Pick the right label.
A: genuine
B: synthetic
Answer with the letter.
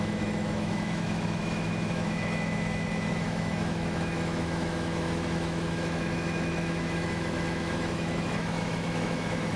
B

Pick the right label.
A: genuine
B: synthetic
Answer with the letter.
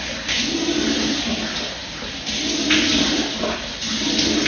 A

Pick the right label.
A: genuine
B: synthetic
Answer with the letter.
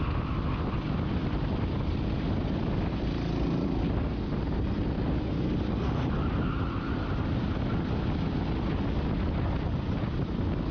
A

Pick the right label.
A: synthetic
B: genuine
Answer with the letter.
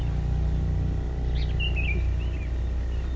B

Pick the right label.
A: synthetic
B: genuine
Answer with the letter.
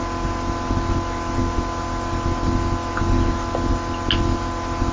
B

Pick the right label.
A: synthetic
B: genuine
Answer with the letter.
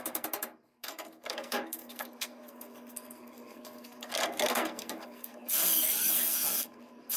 A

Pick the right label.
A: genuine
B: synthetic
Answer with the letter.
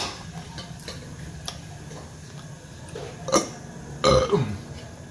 A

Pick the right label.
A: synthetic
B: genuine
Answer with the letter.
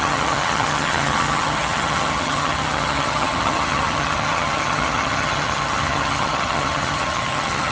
A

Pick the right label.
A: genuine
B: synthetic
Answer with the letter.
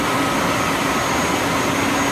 A